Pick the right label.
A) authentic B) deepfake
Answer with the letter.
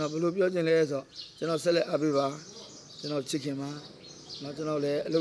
A